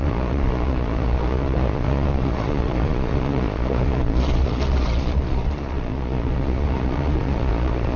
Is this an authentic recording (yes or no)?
no